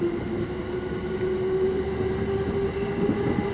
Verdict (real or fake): real